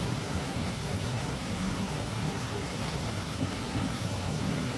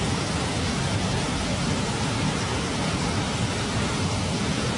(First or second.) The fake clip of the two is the first